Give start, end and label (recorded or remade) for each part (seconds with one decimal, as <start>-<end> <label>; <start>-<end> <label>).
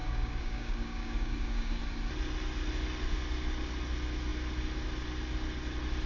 0.0-1.8 remade; 1.8-6.1 recorded